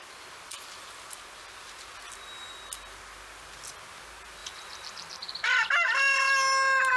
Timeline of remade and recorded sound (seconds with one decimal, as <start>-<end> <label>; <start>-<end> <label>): 0.0-4.4 recorded; 4.4-5.4 remade; 5.4-7.0 recorded